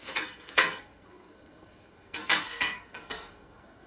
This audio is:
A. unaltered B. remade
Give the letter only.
B